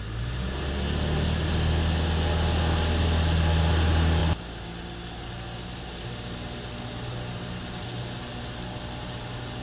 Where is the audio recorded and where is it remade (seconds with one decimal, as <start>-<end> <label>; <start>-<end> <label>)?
0.0-9.6 recorded